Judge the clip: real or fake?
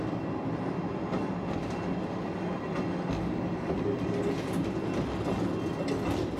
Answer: real